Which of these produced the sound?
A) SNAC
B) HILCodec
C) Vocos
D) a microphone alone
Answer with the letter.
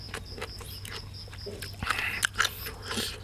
D